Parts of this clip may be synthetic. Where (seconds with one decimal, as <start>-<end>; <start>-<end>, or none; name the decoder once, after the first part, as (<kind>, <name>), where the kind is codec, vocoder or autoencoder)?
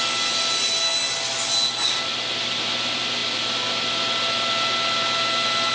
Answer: none